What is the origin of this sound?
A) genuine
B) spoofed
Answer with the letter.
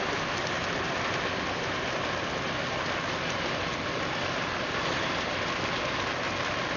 A